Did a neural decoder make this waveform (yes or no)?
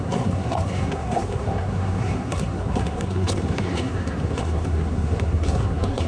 yes